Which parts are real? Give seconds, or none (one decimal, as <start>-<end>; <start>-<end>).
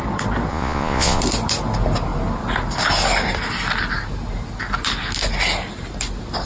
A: 0.0-0.5; 1.2-6.5